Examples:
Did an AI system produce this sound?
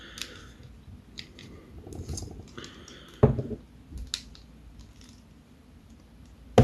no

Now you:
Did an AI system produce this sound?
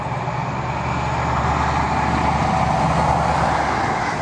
no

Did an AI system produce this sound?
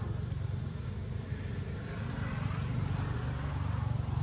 no